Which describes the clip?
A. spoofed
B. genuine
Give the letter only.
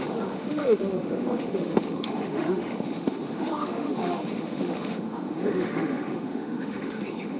A